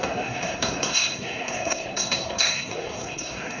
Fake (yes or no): yes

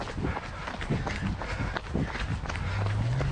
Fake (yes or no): no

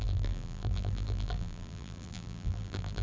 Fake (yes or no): yes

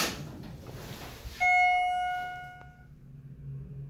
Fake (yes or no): no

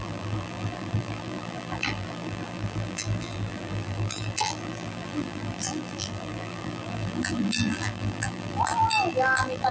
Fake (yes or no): yes